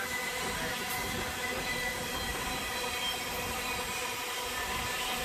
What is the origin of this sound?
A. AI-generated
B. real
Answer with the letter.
A